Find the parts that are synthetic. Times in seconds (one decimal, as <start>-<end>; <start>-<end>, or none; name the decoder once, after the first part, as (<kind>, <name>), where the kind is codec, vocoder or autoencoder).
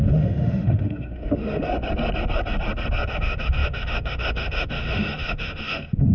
0.0-1.7 (autoencoder, DAC-VAE); 3.1-6.1